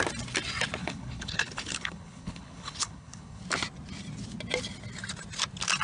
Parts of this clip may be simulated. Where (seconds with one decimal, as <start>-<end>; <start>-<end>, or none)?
0.8-3.4